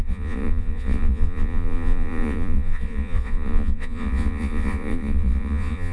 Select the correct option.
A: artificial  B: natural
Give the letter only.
A